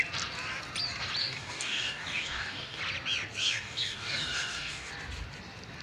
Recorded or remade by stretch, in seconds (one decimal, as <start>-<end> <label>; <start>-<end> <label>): 0.0-1.2 recorded; 1.2-2.8 remade; 2.8-3.4 recorded; 3.4-4.9 remade; 4.9-5.8 recorded